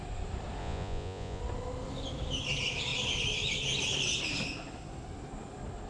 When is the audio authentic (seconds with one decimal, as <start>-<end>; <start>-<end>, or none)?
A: 0.0-0.6; 1.4-5.9